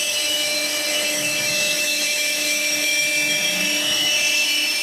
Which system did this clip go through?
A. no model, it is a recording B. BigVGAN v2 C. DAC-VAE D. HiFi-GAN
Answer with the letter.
C